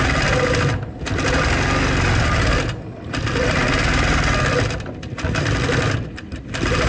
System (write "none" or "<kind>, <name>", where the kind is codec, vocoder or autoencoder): none